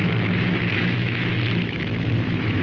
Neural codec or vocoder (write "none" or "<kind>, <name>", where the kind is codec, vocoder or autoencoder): autoencoder, DAC-VAE